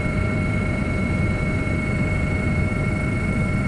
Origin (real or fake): fake